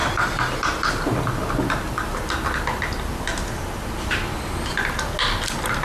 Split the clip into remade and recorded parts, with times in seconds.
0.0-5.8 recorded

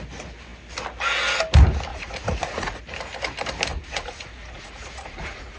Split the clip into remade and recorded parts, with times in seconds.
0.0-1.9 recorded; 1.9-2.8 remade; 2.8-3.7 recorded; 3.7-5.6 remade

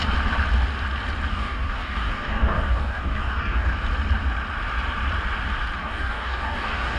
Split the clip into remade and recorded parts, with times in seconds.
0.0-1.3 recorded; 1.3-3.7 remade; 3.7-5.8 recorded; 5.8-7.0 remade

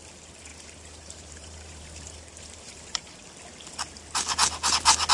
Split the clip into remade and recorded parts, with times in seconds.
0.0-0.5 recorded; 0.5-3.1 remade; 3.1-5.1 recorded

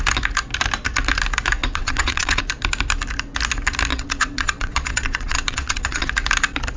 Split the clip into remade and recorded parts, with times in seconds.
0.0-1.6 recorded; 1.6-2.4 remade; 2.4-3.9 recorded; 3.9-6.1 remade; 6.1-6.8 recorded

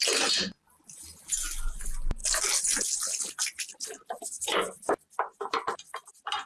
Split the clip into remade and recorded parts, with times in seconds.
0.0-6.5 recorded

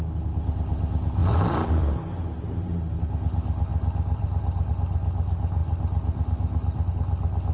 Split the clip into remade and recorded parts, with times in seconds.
0.0-1.2 recorded; 1.2-2.0 remade; 2.0-3.7 recorded; 3.7-4.7 remade; 4.7-5.6 recorded; 5.6-6.9 remade; 6.9-7.5 recorded